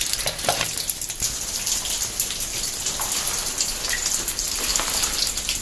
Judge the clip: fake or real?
real